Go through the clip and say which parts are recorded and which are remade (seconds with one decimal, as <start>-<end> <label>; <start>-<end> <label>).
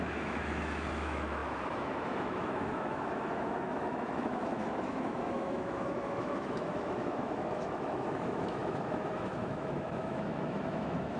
0.0-11.2 remade